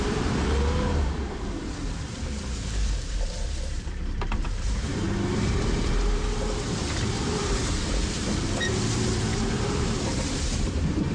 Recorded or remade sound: remade